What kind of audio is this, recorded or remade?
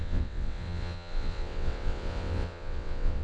remade